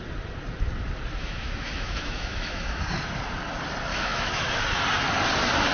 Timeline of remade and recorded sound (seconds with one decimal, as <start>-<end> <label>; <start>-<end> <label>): 0.0-1.2 recorded; 1.2-2.8 remade; 2.8-3.9 recorded; 3.9-4.6 remade; 4.6-5.7 recorded